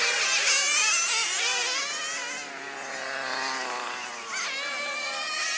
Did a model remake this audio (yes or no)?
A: no